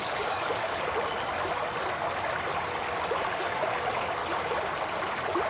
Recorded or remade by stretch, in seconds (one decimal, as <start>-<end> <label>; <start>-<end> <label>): 0.0-0.7 remade; 0.7-3.4 recorded; 3.4-4.2 remade; 4.2-5.5 recorded